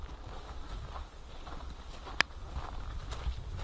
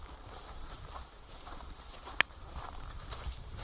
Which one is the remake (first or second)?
second